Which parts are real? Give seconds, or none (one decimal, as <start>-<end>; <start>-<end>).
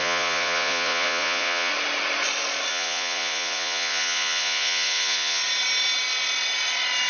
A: 1.7-2.7; 5.4-7.1